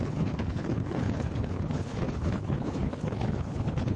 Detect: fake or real fake